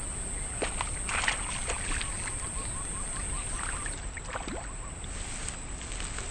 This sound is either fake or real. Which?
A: real